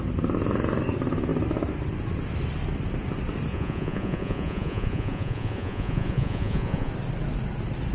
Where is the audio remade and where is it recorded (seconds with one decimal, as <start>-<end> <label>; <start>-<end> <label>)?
0.0-3.5 recorded; 3.5-6.9 remade; 6.9-7.9 recorded